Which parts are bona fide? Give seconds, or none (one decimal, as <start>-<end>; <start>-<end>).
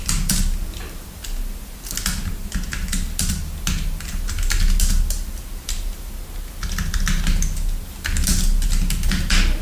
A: 0.0-9.6